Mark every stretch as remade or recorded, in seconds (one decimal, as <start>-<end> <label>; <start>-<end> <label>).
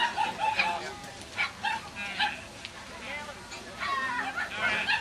0.0-5.0 recorded